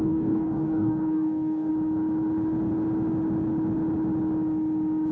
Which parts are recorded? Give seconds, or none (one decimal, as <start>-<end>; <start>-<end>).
1.7-5.1